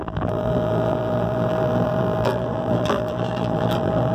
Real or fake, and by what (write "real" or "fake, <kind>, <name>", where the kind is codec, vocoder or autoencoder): fake, vocoder, BigVGAN v2